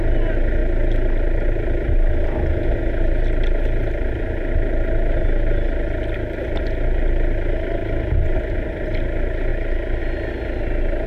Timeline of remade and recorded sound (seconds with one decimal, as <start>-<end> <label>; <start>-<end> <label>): 0.0-7.8 recorded; 7.8-8.8 remade; 8.8-9.5 recorded; 9.5-10.0 remade; 10.0-11.1 recorded